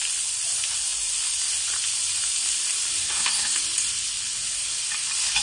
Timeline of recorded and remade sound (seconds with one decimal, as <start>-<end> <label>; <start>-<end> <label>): 0.0-3.0 recorded; 3.0-3.6 remade; 3.6-5.4 recorded